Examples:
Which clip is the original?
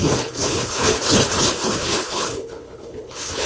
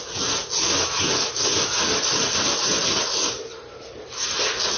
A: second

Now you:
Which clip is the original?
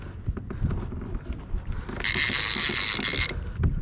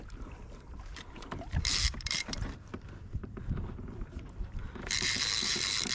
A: first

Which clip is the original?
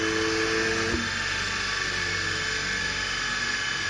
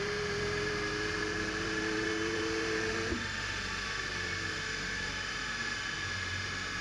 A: first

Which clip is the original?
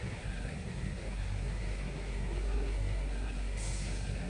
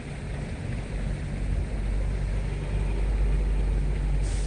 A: second